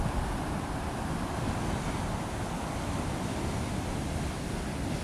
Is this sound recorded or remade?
recorded